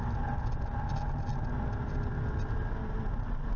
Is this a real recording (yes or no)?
yes